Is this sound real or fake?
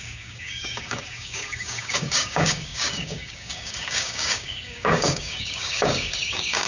fake